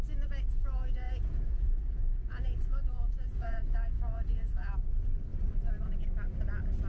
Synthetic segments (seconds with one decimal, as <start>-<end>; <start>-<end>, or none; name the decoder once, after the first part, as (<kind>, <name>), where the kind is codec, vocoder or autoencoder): 0.6-4.7 (vocoder, Vocos)